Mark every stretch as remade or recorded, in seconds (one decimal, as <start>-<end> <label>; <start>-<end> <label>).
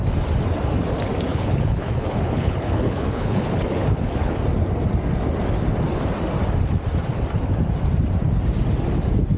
0.0-1.3 recorded; 1.3-4.3 remade; 4.3-9.4 recorded